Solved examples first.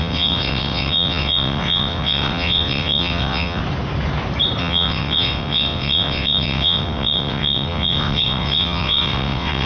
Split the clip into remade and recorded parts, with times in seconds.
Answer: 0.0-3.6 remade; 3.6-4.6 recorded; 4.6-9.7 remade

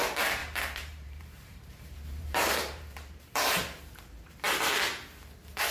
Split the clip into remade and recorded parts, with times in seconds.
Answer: 0.0-0.4 recorded; 0.4-3.8 remade; 3.8-5.7 recorded

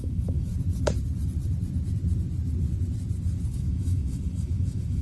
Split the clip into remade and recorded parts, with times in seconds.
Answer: 0.0-0.5 remade; 0.5-3.5 recorded; 3.5-5.0 remade

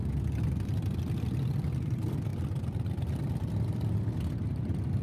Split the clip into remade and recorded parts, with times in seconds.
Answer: 0.0-5.0 recorded

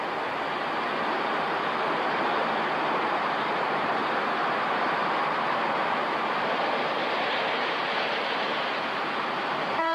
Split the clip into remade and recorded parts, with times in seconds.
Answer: 0.0-2.4 remade; 2.4-3.0 recorded; 3.0-4.0 remade; 4.0-4.7 recorded; 4.7-9.9 remade